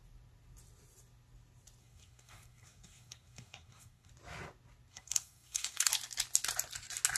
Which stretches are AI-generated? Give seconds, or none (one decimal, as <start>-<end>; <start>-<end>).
1.8-4.1; 4.9-5.9